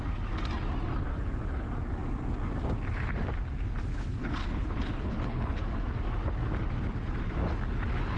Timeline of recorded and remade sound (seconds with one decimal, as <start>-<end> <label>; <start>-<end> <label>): 0.0-3.9 recorded; 3.9-5.6 remade; 5.6-8.2 recorded